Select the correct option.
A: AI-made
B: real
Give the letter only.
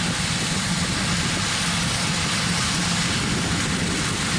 B